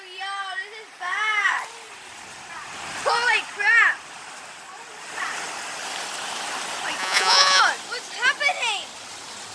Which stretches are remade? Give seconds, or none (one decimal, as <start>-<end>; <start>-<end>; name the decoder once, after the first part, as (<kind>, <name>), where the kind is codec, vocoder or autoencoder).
7.0-7.6 (vocoder, Vocos)